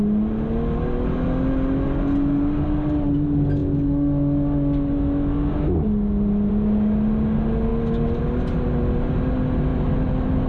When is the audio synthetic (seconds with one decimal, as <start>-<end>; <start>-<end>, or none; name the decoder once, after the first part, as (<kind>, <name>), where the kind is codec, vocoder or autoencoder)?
none